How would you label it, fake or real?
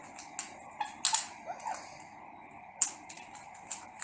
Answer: real